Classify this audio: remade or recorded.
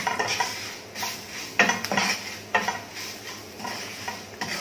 recorded